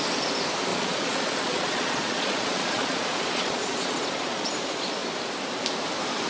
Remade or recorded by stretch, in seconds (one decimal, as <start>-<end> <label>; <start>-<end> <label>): 0.0-0.7 recorded; 0.7-4.5 remade; 4.5-6.3 recorded